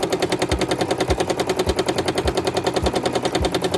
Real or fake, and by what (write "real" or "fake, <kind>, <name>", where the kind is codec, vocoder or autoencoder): real